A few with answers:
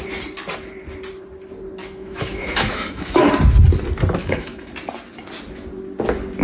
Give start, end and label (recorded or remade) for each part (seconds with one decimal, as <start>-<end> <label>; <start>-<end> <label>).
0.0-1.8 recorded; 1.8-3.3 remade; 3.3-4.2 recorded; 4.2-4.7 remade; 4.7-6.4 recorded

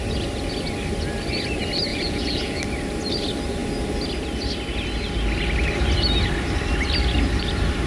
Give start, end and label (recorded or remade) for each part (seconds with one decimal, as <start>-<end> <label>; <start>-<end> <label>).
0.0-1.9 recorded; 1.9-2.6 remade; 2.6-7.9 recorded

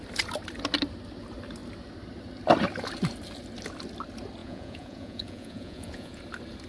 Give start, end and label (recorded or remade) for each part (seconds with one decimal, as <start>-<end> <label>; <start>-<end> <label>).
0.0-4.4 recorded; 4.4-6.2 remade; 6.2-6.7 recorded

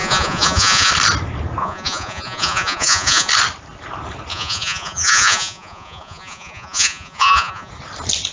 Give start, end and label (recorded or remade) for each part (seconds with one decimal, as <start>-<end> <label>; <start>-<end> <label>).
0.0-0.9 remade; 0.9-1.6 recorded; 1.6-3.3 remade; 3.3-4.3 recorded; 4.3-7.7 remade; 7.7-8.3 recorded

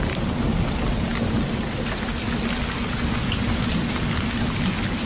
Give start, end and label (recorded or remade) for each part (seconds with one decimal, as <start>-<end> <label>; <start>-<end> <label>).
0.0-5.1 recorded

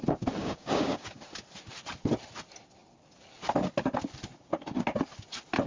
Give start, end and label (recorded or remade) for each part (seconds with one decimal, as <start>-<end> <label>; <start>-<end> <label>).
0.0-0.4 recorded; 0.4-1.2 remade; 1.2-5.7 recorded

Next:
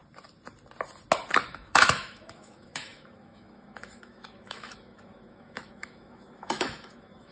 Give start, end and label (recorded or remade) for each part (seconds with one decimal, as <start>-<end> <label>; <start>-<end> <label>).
0.0-1.5 recorded; 1.5-7.3 remade

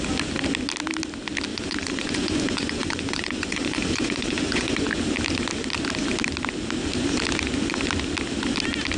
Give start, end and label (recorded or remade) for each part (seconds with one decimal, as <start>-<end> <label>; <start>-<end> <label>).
0.0-1.5 recorded; 1.5-4.9 remade; 4.9-9.0 recorded